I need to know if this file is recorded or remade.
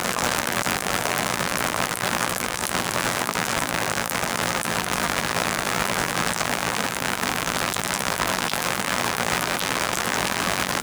remade